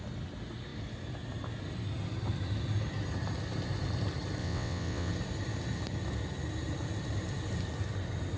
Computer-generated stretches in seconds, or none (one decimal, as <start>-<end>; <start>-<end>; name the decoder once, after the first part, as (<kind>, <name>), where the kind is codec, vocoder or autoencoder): 4.4-5.1 (vocoder, WaveNeXt)